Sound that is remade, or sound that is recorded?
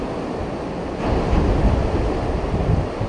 recorded